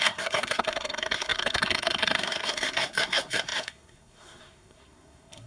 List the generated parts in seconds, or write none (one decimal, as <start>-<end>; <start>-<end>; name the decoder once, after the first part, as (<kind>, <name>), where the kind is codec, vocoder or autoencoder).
0.0-5.5 (codec, SNAC)